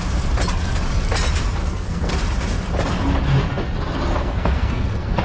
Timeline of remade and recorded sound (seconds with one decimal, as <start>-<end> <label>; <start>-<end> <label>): 0.0-1.6 recorded; 1.6-2.1 remade; 2.1-4.2 recorded; 4.2-5.2 remade